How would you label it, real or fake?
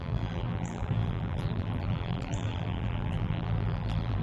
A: fake